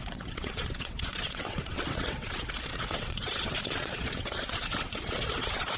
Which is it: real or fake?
fake